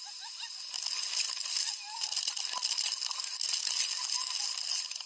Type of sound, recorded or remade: recorded